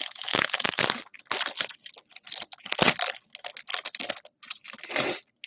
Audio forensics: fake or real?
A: real